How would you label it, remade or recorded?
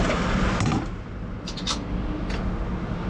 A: recorded